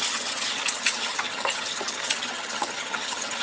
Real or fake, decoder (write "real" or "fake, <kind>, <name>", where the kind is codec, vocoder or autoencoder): fake, vocoder, HiFi-GAN